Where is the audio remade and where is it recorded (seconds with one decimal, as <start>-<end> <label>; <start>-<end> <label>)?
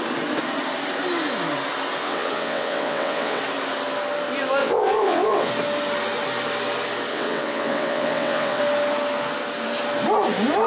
0.0-2.0 recorded; 2.0-3.4 remade; 3.4-4.6 recorded; 4.6-5.5 remade; 5.5-7.1 recorded; 7.1-8.6 remade; 8.6-10.7 recorded